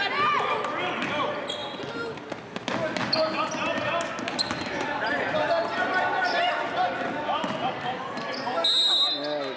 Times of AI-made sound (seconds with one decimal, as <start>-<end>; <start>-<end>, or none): none